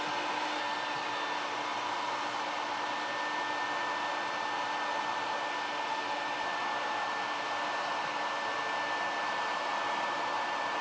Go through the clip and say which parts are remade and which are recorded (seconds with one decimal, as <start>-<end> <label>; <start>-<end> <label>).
0.0-10.8 recorded